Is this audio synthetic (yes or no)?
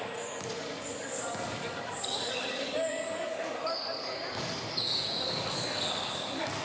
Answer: yes